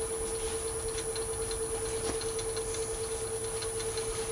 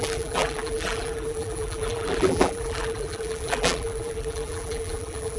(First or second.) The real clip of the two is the first